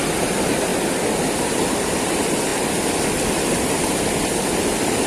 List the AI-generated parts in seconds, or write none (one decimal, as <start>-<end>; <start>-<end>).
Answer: none